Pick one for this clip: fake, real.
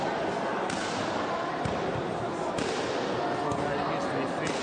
real